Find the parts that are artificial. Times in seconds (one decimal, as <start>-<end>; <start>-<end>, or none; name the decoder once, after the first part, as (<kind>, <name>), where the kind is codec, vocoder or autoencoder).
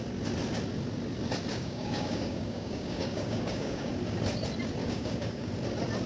1.5-3.9 (codec, DAC); 4.8-5.5